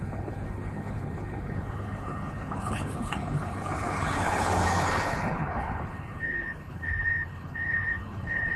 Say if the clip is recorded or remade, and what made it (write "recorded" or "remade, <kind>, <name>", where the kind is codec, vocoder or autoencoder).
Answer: remade, codec, HILCodec